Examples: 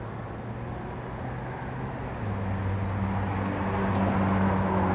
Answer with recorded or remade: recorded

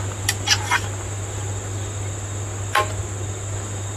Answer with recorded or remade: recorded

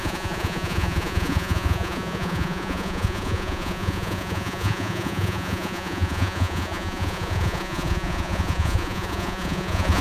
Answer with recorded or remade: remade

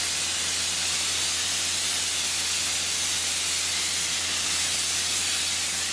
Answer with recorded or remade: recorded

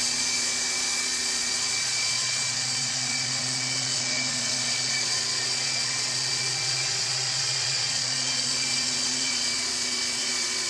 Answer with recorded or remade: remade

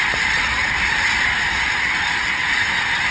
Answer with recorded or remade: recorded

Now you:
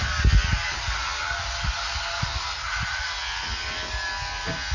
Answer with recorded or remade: recorded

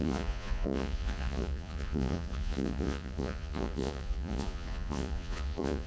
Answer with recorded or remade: remade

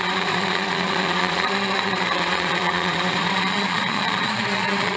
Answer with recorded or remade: remade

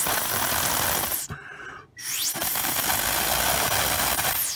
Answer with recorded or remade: recorded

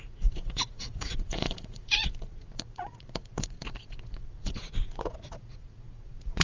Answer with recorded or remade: remade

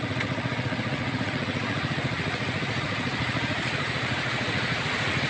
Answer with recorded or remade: remade